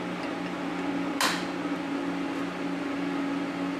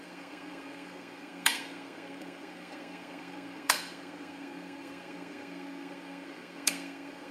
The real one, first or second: first